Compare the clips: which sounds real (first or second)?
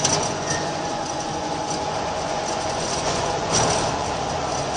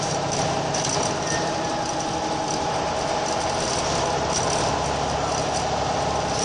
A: second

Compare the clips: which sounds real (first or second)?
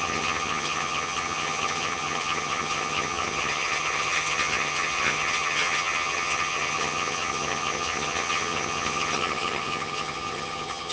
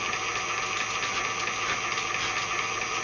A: second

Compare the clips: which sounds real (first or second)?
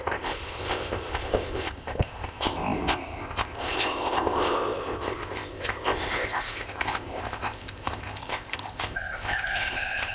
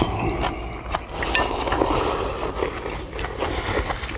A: second